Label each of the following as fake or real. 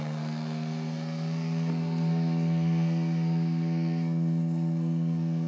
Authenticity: fake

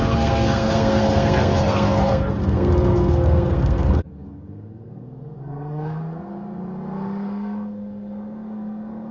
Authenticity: fake